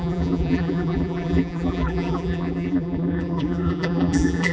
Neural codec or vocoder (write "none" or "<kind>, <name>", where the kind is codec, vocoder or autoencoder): vocoder, BigVGAN v2